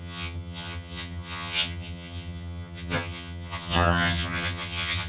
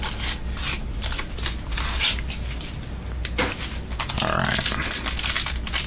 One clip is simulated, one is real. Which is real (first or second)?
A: second